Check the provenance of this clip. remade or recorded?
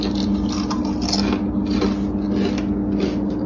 recorded